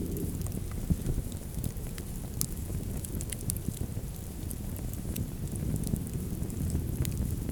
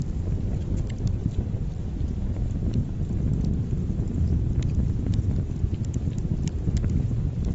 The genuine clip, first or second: second